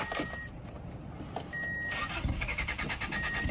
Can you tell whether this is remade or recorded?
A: recorded